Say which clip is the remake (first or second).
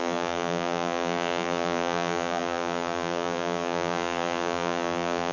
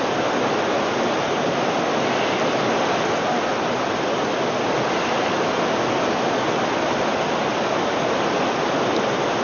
first